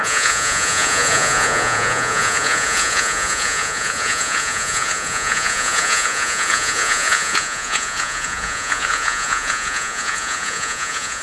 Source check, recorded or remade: remade